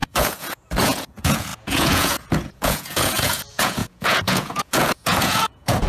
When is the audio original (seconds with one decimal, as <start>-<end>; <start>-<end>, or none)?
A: none